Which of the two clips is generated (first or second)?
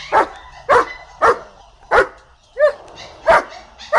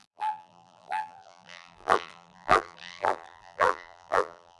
second